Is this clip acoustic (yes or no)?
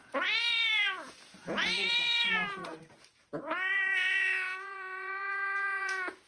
no